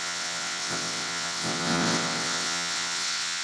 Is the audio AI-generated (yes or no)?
yes